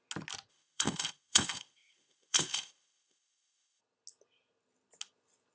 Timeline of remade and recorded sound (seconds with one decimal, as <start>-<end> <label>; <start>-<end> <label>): 0.0-0.5 recorded; 0.5-3.8 remade; 3.8-5.5 recorded